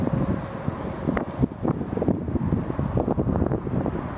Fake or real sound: real